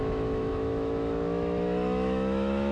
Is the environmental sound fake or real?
fake